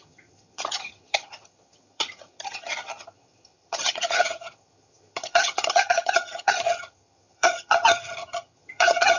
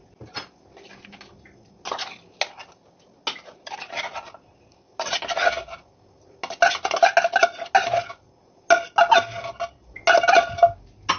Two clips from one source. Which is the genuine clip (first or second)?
second